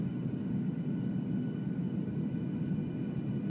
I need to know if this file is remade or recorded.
recorded